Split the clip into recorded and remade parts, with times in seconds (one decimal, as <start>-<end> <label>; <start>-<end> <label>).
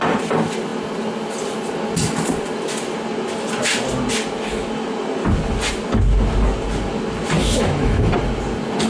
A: 0.0-7.4 recorded; 7.4-8.1 remade; 8.1-8.9 recorded